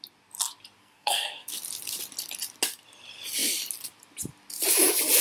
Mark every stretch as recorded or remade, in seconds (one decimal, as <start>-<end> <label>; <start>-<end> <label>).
0.0-0.8 recorded; 0.8-1.5 remade; 1.5-5.2 recorded